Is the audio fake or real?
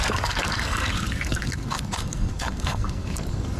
fake